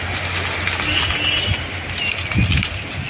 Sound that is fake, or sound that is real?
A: real